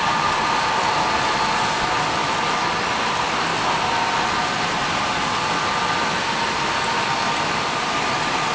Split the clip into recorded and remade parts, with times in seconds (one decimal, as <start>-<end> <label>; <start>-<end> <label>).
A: 0.0-8.5 recorded